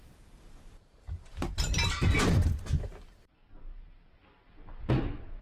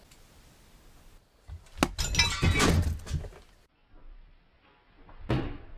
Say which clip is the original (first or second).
second